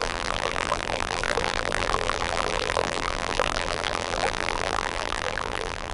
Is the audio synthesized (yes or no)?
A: yes